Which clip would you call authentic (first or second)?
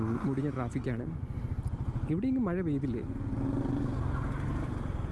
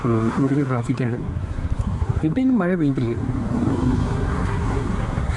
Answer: first